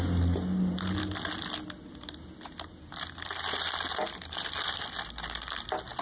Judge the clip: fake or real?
real